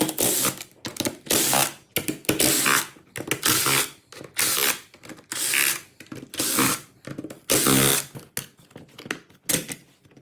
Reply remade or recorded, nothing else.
recorded